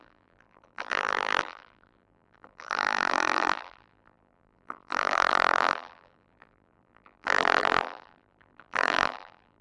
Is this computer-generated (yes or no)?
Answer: yes